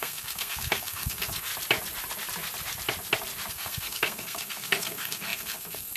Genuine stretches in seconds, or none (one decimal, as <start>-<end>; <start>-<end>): 1.5-3.5